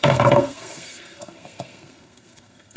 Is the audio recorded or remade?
remade